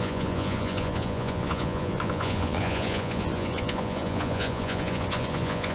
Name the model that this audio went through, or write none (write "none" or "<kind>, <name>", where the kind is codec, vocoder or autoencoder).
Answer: vocoder, Vocos